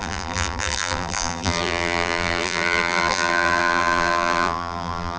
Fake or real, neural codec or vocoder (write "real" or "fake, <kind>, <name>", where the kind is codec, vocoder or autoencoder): fake, vocoder, BigVGAN v2